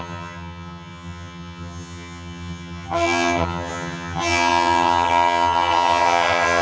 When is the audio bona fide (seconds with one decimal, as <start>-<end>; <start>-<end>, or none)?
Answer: none